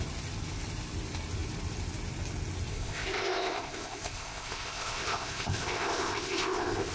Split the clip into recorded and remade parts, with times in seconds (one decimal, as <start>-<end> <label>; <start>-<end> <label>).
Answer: 0.0-2.7 recorded; 2.7-6.9 remade